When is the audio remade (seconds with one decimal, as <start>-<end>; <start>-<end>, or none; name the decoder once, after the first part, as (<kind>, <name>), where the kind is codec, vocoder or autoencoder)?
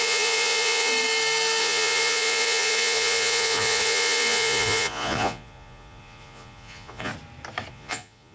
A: 0.0-0.9 (vocoder, Vocos); 1.6-7.1; 7.7-8.3